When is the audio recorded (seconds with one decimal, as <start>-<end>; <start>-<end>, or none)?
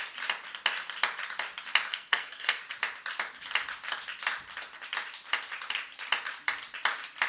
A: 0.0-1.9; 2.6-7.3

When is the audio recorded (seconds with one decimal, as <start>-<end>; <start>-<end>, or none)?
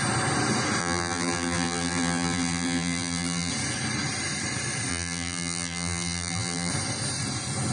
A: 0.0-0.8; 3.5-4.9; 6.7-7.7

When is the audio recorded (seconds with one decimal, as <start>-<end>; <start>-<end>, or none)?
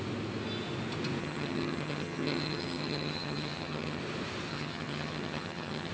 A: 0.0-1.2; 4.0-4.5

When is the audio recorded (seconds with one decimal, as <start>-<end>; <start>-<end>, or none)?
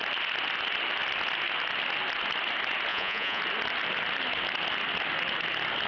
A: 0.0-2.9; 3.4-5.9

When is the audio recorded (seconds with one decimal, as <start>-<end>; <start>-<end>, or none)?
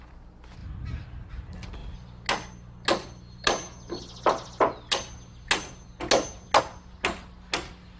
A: 0.0-8.0